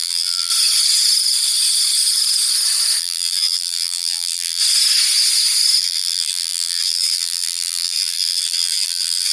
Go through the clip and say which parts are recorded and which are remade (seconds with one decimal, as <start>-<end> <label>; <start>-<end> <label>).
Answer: 0.0-0.5 remade; 0.5-3.0 recorded; 3.0-4.6 remade; 4.6-5.8 recorded; 5.8-9.3 remade